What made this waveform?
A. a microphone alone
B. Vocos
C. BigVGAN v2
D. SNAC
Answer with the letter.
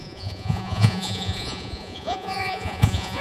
B